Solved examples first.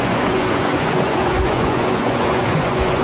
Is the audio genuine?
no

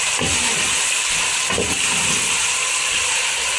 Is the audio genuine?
yes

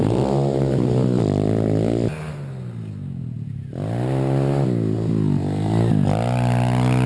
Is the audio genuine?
yes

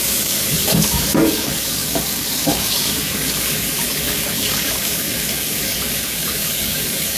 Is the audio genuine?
no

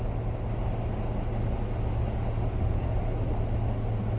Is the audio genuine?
yes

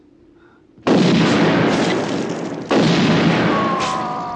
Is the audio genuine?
no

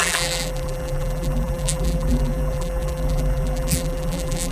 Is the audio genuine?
no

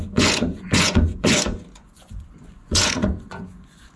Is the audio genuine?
no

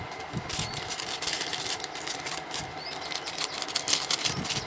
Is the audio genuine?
yes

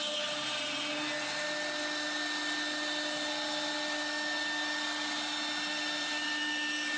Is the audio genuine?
yes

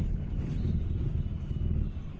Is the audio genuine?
yes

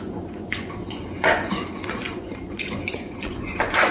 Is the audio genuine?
no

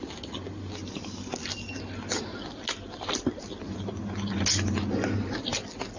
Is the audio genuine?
yes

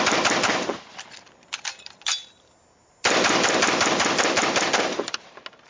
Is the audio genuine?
yes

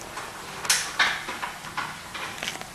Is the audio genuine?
yes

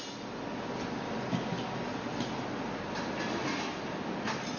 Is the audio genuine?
yes